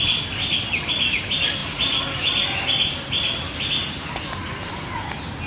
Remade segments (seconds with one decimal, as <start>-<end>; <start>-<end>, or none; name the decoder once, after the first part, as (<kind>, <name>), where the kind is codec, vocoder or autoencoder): none